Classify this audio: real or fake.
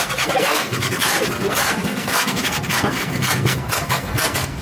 fake